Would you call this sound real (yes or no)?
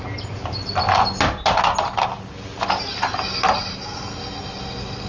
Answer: yes